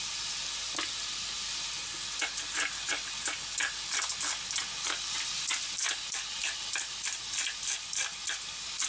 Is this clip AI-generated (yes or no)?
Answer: no